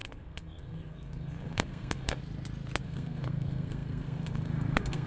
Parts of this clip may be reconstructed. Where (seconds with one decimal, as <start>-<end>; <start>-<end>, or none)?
0.0-2.2; 2.8-5.1